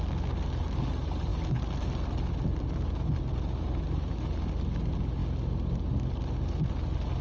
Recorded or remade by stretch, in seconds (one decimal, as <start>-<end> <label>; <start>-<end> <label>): 0.0-7.2 recorded